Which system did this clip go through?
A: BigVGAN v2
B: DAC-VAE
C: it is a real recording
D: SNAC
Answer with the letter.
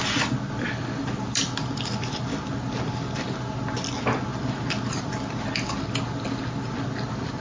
C